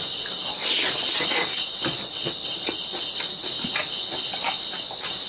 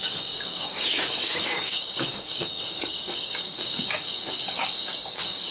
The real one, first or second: first